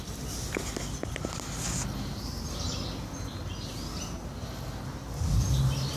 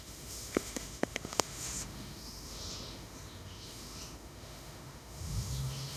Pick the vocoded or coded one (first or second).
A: second